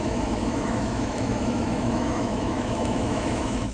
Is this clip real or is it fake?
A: fake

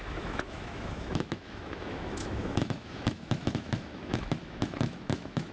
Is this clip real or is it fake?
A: fake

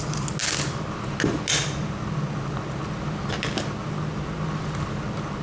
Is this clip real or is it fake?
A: real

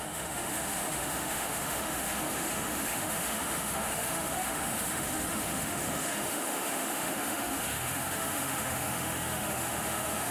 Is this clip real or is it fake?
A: fake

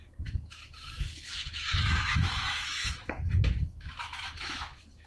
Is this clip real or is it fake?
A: fake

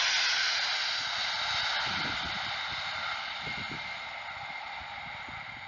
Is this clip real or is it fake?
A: real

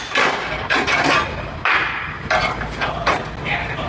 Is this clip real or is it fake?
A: real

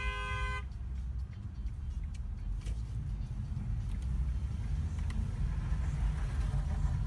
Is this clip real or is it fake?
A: real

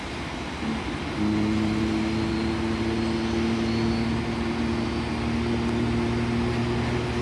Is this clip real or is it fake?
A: real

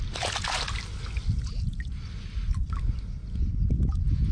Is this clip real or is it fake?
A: real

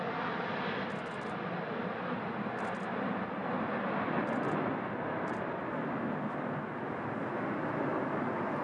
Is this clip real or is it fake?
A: real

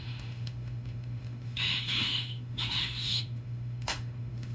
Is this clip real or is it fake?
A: fake